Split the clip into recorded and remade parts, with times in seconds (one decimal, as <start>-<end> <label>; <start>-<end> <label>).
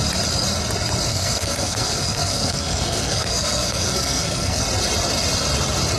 0.0-1.1 recorded; 1.1-4.6 remade; 4.6-6.0 recorded